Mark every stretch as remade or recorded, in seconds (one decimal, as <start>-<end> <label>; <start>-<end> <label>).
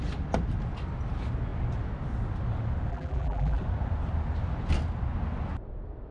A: 0.0-2.9 recorded; 2.9-3.6 remade; 3.6-6.1 recorded